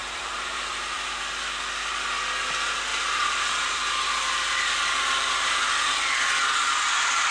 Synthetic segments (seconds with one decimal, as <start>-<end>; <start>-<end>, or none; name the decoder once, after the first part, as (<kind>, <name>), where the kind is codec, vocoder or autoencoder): 0.0-1.2 (vocoder, BigVGAN v2); 2.9-6.4